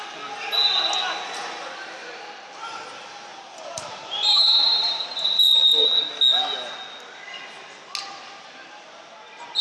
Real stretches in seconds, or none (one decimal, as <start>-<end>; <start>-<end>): 0.0-3.3; 6.1-9.6